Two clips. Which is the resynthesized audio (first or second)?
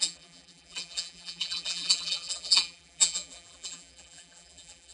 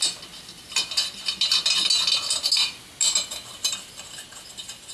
first